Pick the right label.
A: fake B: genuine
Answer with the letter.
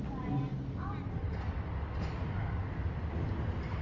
B